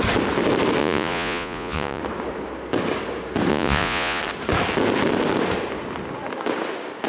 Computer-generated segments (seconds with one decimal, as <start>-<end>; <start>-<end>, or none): 0.8-2.0; 3.5-4.2